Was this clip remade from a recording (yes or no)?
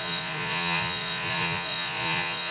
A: yes